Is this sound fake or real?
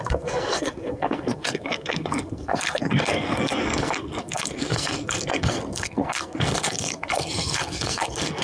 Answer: fake